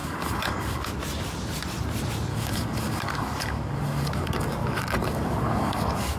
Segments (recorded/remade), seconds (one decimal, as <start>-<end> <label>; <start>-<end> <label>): 0.0-0.9 remade; 0.9-2.3 recorded; 2.3-6.2 remade